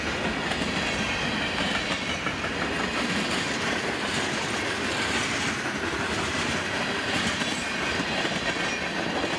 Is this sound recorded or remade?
recorded